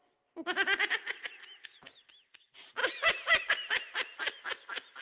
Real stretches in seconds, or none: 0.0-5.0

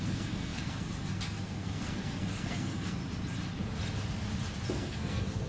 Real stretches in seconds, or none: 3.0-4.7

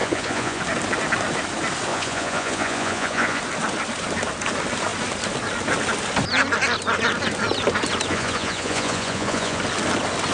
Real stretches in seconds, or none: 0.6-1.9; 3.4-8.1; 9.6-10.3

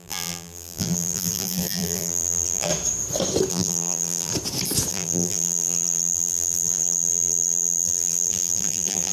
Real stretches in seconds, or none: 2.7-3.5; 4.3-4.9

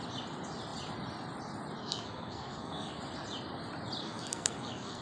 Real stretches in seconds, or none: 0.0-1.8; 3.0-4.0

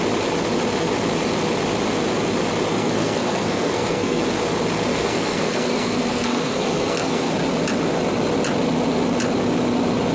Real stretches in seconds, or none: 0.0-2.7; 4.2-4.9; 7.3-10.1

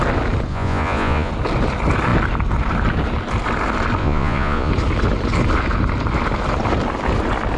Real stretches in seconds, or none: 0.0-0.5; 1.3-4.0; 4.7-7.6